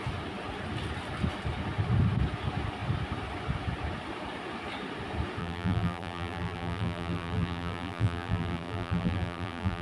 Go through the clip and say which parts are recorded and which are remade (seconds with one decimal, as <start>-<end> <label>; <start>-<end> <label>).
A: 0.0-5.4 recorded; 5.4-9.8 remade